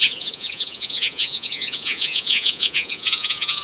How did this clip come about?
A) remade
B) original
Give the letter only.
A